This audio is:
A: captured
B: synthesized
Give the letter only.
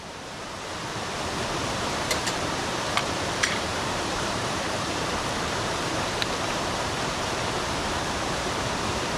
B